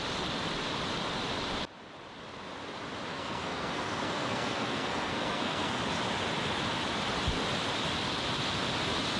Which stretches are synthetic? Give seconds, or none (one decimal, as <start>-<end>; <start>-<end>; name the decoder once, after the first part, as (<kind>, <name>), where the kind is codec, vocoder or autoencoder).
3.1-5.8 (codec, SNAC)